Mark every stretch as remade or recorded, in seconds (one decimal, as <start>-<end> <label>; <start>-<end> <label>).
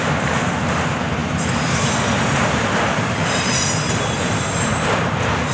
0.0-5.5 remade